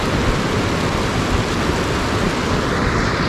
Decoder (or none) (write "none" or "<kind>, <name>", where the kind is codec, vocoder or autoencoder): none